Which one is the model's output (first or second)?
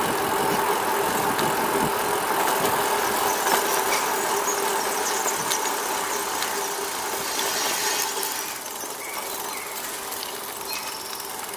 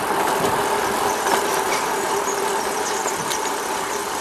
second